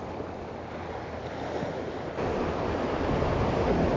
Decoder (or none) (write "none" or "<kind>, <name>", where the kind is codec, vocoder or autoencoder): none